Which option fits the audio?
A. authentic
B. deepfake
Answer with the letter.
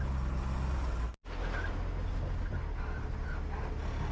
A